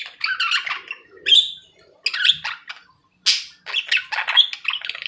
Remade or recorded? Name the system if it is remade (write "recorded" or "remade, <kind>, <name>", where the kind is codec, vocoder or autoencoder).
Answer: recorded